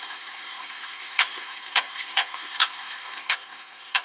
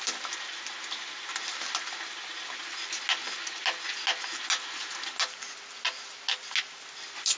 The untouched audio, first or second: second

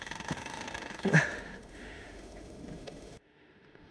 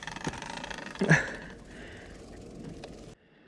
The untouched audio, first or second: second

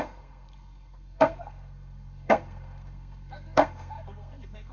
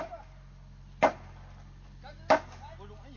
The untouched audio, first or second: second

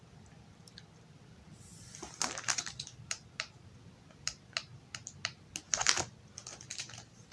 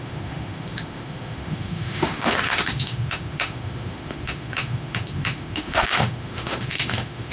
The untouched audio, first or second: first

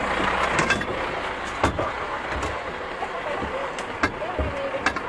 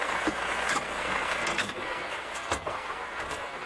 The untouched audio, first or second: first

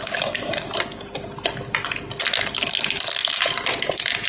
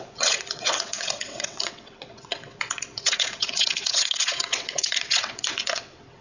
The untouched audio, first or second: first